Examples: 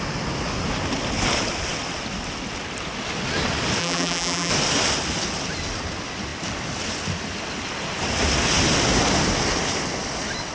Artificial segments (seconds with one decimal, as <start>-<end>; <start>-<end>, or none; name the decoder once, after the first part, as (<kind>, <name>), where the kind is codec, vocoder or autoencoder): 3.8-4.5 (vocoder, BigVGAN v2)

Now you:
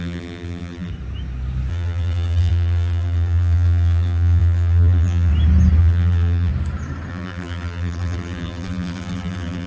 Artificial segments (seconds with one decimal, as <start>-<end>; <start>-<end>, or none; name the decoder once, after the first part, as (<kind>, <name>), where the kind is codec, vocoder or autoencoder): 0.0-0.9 (vocoder, BigVGAN v2); 1.7-5.3; 5.8-6.5; 7.1-9.7

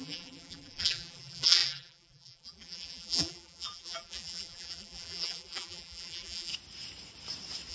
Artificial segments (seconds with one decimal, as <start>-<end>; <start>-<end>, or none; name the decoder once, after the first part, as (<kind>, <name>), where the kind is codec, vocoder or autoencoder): 0.0-6.5 (vocoder, BigVGAN v2)